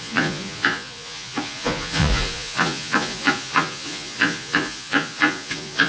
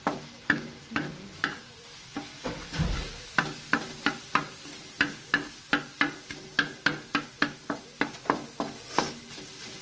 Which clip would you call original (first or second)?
second